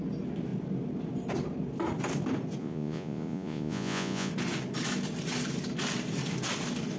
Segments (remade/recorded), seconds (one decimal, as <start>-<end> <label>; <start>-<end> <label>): 0.0-2.6 recorded; 2.6-4.3 remade; 4.3-7.0 recorded